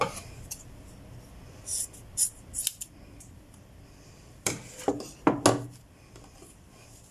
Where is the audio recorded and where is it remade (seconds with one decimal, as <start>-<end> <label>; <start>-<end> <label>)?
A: 0.0-2.6 recorded; 2.6-4.9 remade; 4.9-7.1 recorded